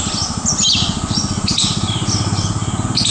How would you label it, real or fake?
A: real